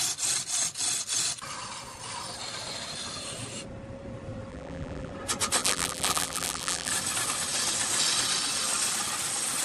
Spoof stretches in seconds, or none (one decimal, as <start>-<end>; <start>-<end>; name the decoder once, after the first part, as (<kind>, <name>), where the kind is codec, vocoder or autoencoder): 4.5-5.1 (vocoder, BigVGAN v2); 5.6-6.9